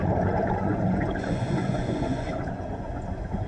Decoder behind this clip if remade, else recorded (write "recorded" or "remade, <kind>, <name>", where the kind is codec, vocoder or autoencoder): remade, vocoder, Vocos